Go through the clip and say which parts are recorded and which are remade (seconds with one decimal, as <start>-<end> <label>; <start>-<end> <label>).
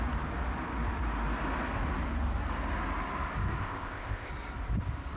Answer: 0.0-3.6 recorded; 3.6-4.3 remade; 4.3-5.2 recorded